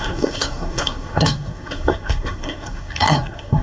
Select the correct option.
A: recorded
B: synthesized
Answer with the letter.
B